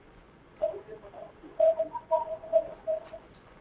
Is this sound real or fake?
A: fake